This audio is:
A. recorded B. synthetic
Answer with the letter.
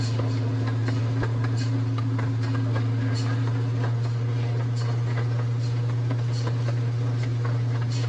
A